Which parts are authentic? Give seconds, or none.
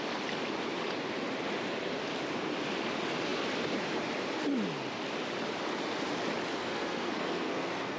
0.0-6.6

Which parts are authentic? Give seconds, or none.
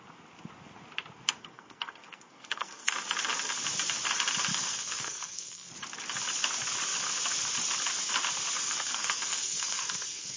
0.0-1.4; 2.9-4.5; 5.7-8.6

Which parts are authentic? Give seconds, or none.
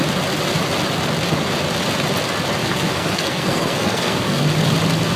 0.0-2.6; 4.4-5.2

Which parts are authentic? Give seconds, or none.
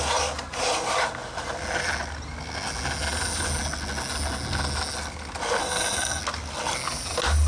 0.0-5.6; 6.2-7.5